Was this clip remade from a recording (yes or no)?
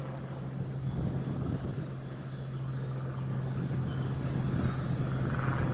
no